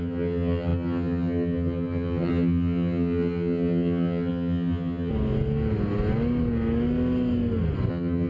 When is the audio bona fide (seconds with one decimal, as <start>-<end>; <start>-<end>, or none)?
5.1-7.9